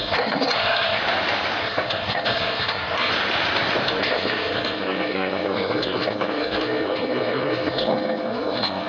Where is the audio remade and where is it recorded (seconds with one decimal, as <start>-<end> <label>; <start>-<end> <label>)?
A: 0.0-1.0 remade; 1.0-1.6 recorded; 1.6-3.1 remade; 3.1-4.0 recorded; 4.0-8.9 remade